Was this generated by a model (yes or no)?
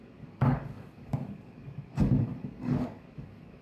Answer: yes